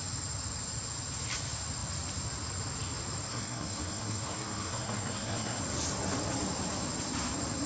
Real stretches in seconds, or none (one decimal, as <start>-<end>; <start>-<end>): 0.0-3.3; 5.6-7.7